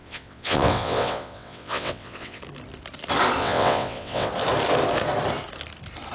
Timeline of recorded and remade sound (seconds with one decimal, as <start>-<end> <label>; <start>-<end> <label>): 0.0-2.4 remade; 2.4-3.4 recorded; 3.4-4.3 remade; 4.3-6.1 recorded